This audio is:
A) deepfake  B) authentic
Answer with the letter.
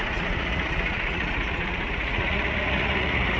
A